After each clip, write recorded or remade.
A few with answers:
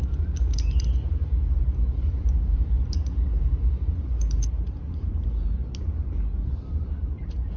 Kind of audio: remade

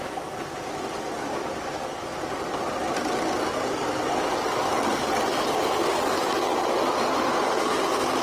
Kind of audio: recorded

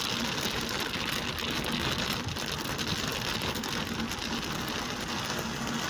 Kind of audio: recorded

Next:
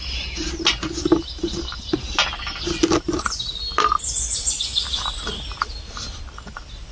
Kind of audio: recorded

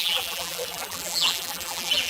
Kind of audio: remade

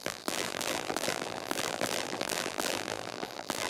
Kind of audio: remade